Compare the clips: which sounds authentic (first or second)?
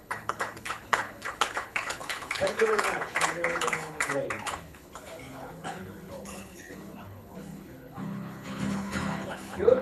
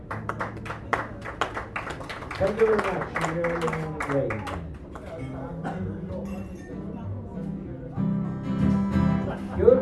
second